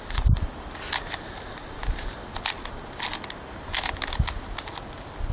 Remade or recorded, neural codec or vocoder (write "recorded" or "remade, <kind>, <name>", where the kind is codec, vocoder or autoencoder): recorded